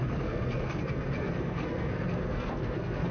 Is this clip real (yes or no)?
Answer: no